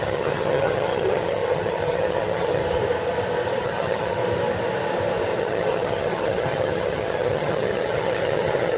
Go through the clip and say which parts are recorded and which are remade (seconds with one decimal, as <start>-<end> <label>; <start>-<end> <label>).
0.0-2.6 remade; 2.6-3.6 recorded; 3.6-4.2 remade; 4.2-5.4 recorded; 5.4-8.8 remade